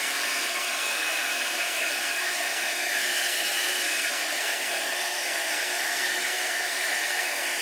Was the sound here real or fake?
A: fake